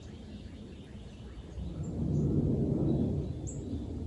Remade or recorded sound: recorded